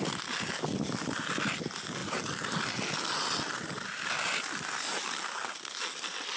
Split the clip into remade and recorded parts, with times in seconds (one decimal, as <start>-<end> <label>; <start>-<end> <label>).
0.0-6.4 recorded

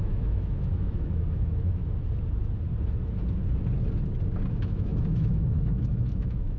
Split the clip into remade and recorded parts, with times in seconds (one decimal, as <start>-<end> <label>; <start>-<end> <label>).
0.0-1.8 remade; 1.8-4.5 recorded; 4.5-6.6 remade

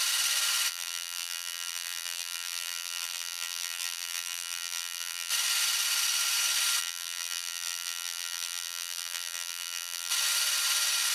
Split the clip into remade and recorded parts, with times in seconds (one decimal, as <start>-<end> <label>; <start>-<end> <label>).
0.0-0.7 recorded; 0.7-5.3 remade; 5.3-6.8 recorded; 6.8-10.1 remade; 10.1-11.1 recorded

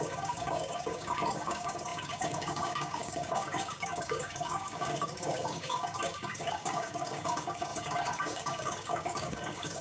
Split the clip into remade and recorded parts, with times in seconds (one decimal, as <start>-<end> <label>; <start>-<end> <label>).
0.0-9.8 remade

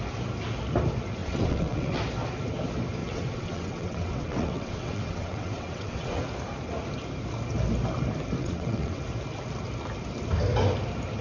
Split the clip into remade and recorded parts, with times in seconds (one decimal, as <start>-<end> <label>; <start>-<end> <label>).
0.0-1.2 recorded; 1.2-2.0 remade; 2.0-3.0 recorded; 3.0-6.2 remade; 6.2-8.4 recorded; 8.4-9.0 remade; 9.0-11.2 recorded

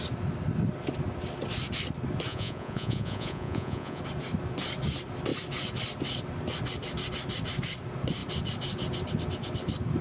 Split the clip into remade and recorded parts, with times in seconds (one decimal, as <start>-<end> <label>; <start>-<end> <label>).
0.0-2.3 recorded; 2.3-4.0 remade; 4.0-10.0 recorded

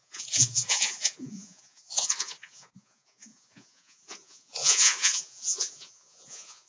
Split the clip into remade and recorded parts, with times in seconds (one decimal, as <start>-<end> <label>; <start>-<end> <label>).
0.0-6.7 remade

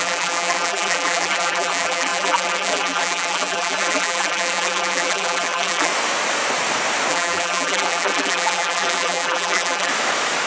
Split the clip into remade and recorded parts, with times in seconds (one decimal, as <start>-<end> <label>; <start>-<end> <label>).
0.0-5.9 remade; 5.9-7.1 recorded; 7.1-9.9 remade; 9.9-10.5 recorded